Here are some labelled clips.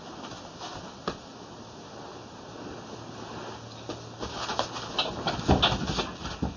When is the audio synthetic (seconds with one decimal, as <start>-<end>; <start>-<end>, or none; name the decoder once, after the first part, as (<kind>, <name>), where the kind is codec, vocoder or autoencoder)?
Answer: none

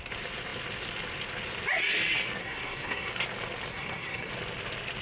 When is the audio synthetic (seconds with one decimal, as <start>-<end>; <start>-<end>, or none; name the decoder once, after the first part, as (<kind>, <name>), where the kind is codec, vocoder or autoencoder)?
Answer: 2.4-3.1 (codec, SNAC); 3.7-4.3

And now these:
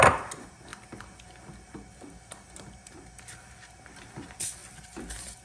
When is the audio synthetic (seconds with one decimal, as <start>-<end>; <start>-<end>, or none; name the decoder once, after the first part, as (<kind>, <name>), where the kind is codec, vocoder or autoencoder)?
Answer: none

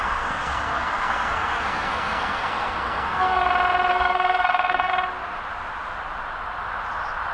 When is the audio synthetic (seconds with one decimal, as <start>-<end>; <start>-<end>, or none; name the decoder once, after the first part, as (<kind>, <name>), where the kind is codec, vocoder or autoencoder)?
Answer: 0.0-3.5 (codec, SNAC); 3.9-4.9

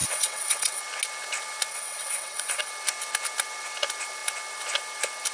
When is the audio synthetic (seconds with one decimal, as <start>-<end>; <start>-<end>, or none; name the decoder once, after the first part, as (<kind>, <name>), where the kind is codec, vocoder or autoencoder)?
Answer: 0.0-0.8 (vocoder, WaveNeXt); 1.7-2.7

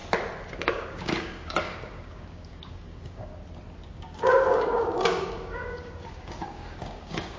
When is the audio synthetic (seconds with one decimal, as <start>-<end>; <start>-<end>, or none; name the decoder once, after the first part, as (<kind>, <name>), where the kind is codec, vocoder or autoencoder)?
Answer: 0.7-3.3 (codec, DAC); 4.0-7.4

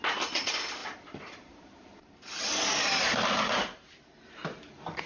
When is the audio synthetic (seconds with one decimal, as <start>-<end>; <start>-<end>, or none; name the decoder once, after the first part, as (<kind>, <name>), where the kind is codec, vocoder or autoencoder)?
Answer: 0.0-4.4 (vocoder, BigVGAN v2)

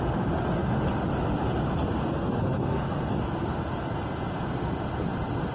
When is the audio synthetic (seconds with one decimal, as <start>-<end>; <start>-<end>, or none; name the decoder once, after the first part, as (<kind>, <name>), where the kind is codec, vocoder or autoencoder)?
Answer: 2.0-3.1 (codec, SNAC)